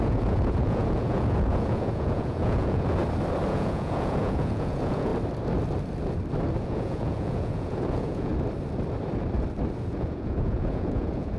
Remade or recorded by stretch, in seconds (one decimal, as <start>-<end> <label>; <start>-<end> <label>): 0.0-3.0 remade; 3.0-3.5 recorded; 3.5-5.1 remade; 5.1-6.6 recorded; 6.6-8.3 remade; 8.3-9.8 recorded; 9.8-11.4 remade